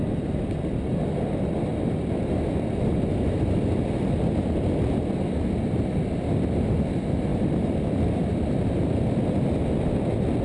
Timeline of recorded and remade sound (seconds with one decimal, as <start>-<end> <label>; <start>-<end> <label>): 0.0-10.4 recorded